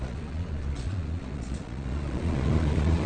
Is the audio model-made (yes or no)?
yes